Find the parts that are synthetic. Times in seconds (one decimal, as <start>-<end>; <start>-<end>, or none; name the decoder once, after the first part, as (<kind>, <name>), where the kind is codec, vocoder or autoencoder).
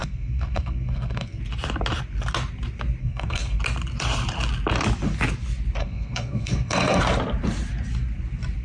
0.0-1.4 (codec, SNAC); 3.0-3.6; 5.8-7.0